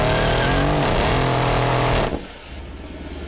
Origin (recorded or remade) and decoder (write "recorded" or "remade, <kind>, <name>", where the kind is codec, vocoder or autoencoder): recorded